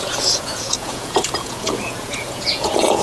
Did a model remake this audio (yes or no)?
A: yes